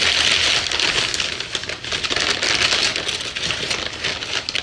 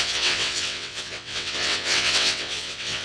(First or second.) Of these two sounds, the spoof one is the second